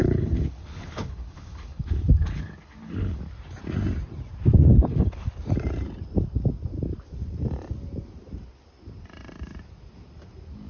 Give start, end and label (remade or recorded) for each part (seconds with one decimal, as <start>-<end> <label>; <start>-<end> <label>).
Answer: 0.0-3.2 remade; 3.2-4.7 recorded; 4.7-5.3 remade; 5.3-10.7 recorded